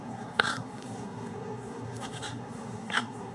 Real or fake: fake